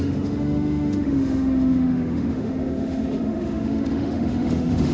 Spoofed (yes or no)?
yes